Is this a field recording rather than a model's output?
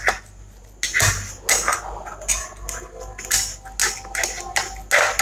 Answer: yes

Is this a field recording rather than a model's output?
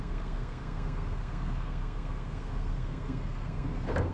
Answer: no